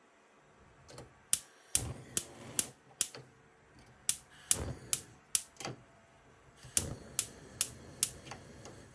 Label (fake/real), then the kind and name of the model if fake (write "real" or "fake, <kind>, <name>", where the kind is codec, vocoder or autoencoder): real